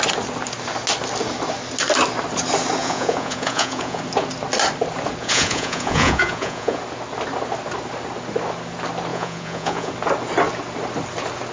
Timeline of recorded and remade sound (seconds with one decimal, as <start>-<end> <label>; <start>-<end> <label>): 0.0-2.8 recorded; 2.8-4.0 remade; 4.0-5.2 recorded; 5.2-6.8 remade; 6.8-9.1 recorded; 9.1-9.9 remade; 9.9-11.5 recorded